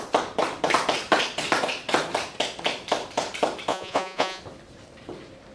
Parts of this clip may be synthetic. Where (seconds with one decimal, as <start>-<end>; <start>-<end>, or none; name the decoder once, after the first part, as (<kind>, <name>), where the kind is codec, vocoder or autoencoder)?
3.7-4.4 (vocoder, Vocos)